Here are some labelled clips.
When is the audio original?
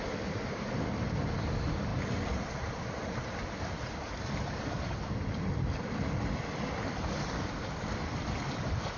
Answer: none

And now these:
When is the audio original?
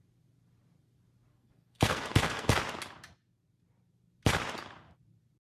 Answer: 0.0-1.3; 2.6-5.4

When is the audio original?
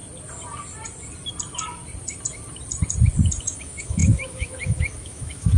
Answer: 0.0-3.4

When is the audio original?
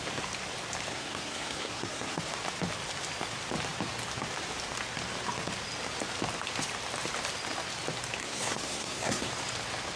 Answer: 0.0-0.9; 2.2-8.2; 9.3-10.0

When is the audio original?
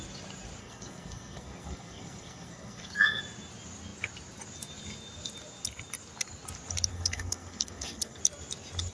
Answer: 0.0-0.6; 3.2-6.9; 8.2-8.9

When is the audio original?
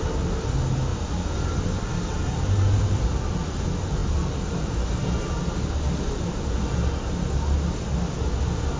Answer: 0.0-0.9; 1.9-8.8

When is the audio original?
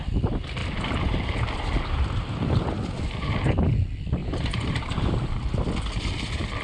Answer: 0.0-4.2; 5.3-6.6